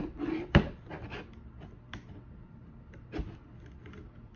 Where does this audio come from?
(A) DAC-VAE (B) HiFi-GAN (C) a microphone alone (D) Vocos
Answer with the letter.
C